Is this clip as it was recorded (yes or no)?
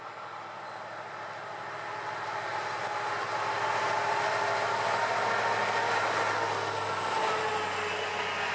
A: yes